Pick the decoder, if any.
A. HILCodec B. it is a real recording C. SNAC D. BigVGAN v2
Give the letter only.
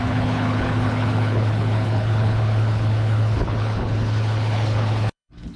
A